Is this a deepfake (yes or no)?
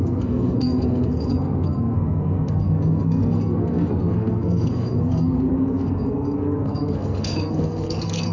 yes